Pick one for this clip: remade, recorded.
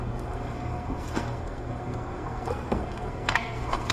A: remade